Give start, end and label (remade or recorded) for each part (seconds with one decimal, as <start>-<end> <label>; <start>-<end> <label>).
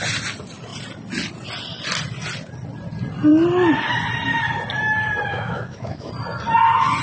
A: 0.0-5.3 recorded; 5.3-6.1 remade; 6.1-7.0 recorded